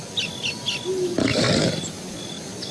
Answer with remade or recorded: recorded